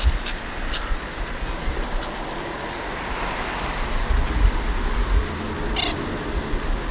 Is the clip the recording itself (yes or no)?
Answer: yes